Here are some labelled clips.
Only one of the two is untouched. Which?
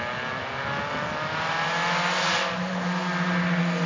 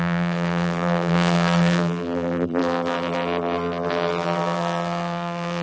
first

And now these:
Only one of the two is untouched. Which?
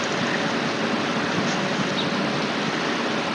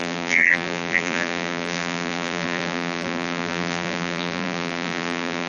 first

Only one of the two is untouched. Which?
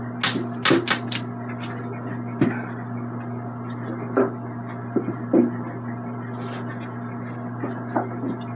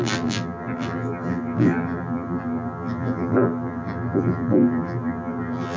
first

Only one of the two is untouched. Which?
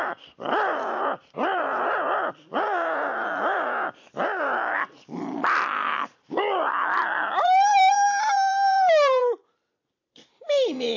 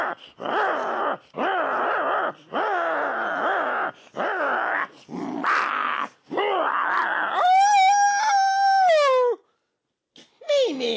second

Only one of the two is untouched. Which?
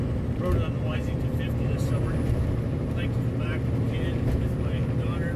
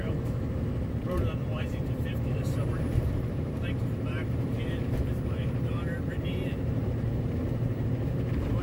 first